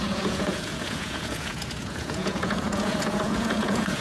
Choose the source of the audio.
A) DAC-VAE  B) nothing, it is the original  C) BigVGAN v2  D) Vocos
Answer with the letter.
D